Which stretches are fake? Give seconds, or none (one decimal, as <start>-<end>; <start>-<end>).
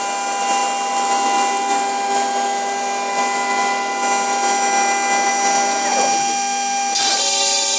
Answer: none